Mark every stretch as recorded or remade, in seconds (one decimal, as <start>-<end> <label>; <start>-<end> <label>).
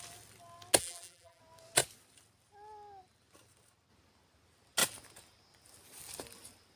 0.0-0.8 recorded; 0.8-1.4 remade; 1.4-6.8 recorded